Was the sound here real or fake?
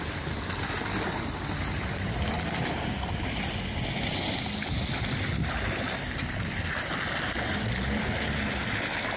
real